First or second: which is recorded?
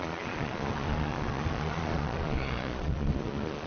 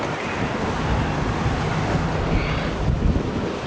second